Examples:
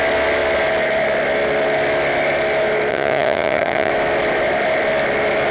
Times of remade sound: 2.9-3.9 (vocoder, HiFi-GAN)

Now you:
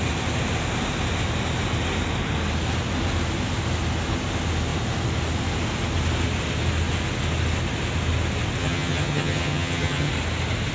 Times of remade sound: 8.6-10.1 (vocoder, HiFi-GAN)

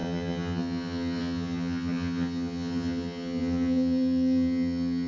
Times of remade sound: 0.0-5.1 (vocoder, HiFi-GAN)

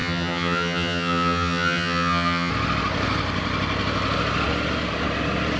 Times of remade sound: 0.0-2.5 (vocoder, HiFi-GAN)